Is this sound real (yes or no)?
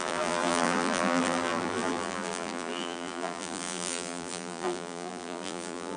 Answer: no